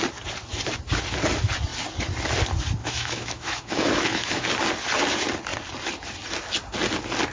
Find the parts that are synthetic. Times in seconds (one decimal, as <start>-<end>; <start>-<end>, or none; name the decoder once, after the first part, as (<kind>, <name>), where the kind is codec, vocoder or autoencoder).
2.8-4.5 (autoencoder, DAC-VAE)